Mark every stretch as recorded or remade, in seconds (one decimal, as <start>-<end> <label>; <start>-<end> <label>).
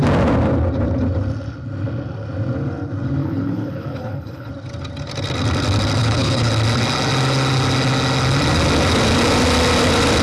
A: 0.0-3.2 recorded; 3.2-4.5 remade; 4.5-6.0 recorded; 6.0-6.5 remade; 6.5-10.2 recorded